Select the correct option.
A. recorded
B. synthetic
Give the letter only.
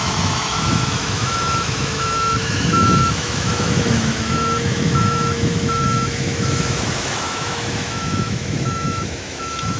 B